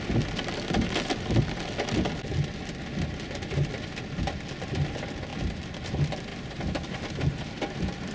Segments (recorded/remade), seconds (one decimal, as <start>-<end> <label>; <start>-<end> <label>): 0.0-8.1 recorded